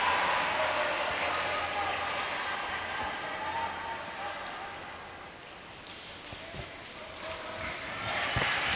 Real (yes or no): yes